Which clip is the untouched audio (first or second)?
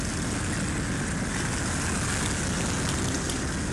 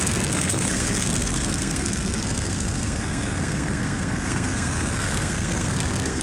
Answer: first